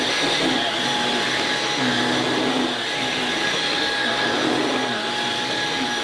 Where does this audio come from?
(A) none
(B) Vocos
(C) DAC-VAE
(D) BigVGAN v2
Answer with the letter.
A